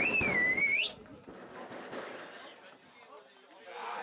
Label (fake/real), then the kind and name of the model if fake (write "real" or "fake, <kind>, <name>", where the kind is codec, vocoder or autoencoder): real